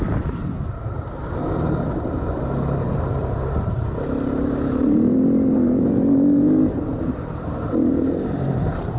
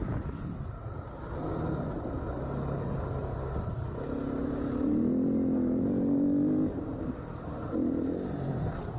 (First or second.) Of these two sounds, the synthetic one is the first